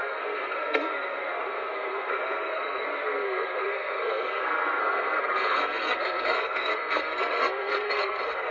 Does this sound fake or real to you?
fake